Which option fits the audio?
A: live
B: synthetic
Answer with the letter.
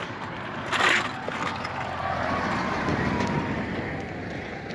A